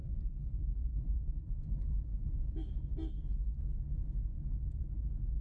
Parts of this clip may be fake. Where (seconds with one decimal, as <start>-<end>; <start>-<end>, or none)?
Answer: 0.0-2.1